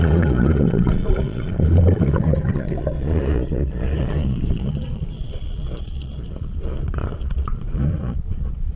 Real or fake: fake